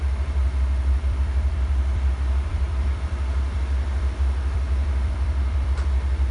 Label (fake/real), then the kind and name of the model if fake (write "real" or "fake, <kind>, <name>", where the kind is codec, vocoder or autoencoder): fake, vocoder, BigVGAN v2